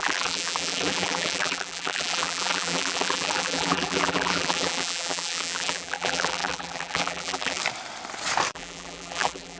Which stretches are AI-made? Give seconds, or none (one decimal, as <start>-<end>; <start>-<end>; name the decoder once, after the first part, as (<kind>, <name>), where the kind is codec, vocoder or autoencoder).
0.0-7.6 (vocoder, BigVGAN v2); 8.5-9.6